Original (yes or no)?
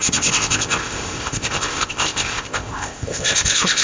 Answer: no